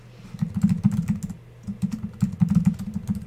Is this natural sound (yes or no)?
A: yes